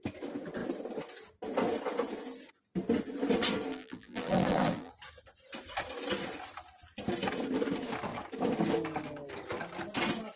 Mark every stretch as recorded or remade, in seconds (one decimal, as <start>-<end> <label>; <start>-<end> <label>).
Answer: 0.0-3.7 recorded; 3.7-4.9 remade; 4.9-10.4 recorded